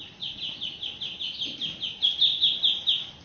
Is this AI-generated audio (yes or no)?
no